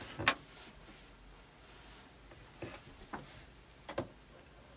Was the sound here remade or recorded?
recorded